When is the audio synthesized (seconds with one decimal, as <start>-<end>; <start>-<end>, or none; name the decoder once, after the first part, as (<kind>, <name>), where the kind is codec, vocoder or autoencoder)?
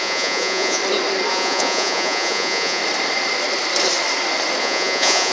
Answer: 0.0-0.8 (vocoder, Vocos); 1.3-2.8; 4.6-5.3